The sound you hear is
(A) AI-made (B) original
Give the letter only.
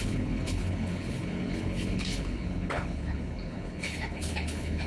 A